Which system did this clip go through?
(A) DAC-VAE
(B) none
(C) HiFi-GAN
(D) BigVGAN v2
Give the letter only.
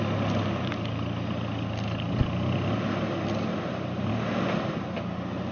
B